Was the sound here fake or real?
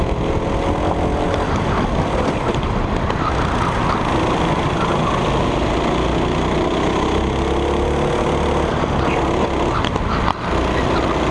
real